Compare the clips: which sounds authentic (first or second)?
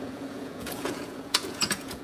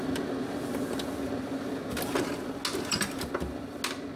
second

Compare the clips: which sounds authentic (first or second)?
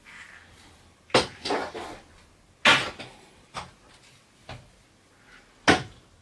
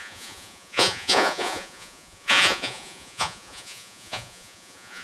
first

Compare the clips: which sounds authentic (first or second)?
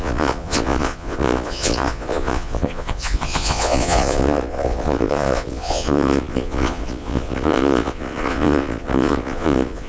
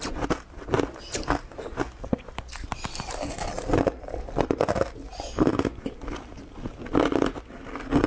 second